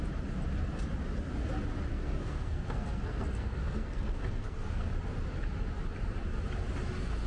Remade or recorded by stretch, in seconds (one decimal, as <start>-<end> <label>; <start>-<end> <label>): 0.0-1.9 recorded; 1.9-4.9 remade; 4.9-7.3 recorded